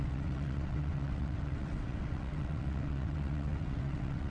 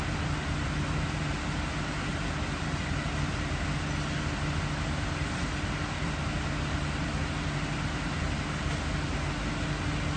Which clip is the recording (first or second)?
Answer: second